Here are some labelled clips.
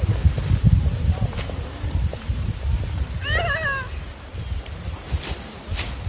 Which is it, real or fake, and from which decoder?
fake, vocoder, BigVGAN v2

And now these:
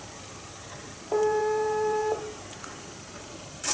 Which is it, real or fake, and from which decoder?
fake, vocoder, BigVGAN v2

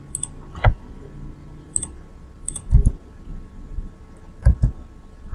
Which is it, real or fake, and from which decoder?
real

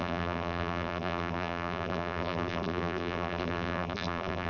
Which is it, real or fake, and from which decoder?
fake, vocoder, BigVGAN v2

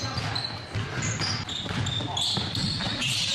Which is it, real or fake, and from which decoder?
real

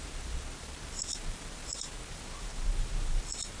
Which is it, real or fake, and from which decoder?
fake, vocoder, BigVGAN v2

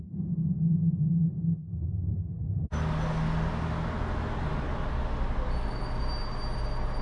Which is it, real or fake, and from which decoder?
real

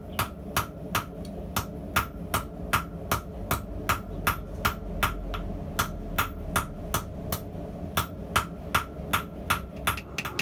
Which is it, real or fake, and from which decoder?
real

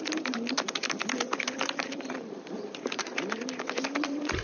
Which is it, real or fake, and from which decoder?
fake, vocoder, BigVGAN v2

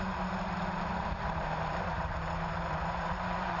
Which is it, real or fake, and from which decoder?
fake, vocoder, BigVGAN v2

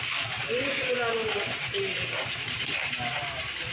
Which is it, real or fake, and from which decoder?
real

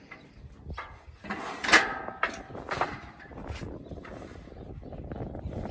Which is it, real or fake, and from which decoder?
real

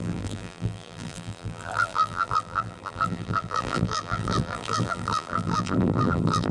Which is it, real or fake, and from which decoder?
fake, vocoder, BigVGAN v2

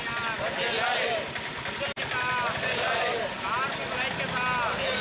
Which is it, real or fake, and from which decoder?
real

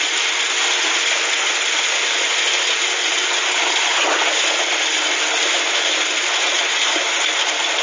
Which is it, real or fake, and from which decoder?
real